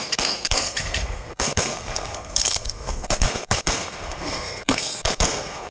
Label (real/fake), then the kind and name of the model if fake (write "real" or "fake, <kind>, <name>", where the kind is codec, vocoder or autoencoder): fake, codec, SNAC